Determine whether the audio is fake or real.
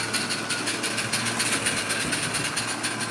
real